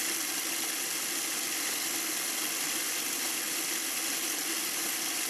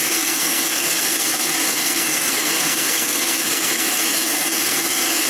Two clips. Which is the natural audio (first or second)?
first